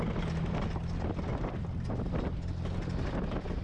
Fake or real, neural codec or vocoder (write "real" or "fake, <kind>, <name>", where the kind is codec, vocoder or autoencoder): real